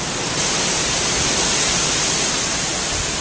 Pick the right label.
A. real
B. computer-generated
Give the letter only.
A